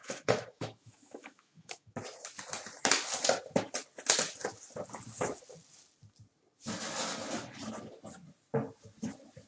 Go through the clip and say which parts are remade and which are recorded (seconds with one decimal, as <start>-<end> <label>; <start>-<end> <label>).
0.0-2.0 remade; 2.0-9.5 recorded